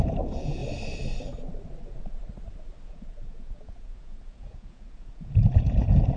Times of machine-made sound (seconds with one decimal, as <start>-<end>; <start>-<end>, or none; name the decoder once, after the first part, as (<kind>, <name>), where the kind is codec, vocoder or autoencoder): 0.0-0.6 (vocoder, Vocos); 2.9-6.2